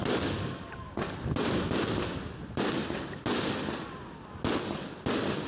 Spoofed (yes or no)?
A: no